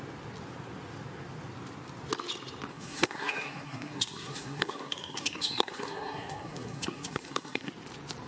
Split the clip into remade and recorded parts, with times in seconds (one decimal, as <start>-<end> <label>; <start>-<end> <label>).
0.0-2.7 recorded; 2.7-7.7 remade; 7.7-8.3 recorded